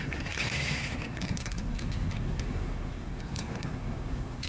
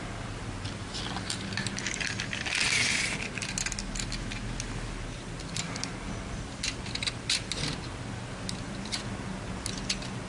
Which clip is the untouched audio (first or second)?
second